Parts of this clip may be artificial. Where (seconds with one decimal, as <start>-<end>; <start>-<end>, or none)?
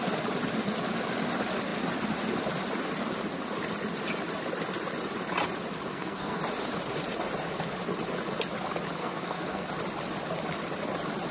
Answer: 5.9-6.4; 9.0-9.7